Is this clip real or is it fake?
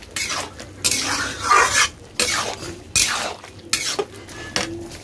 real